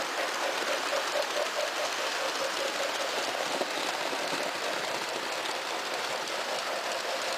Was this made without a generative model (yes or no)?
yes